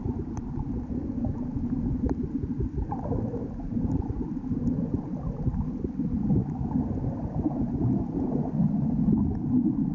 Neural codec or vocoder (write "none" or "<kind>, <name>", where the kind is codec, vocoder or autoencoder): vocoder, BigVGAN v2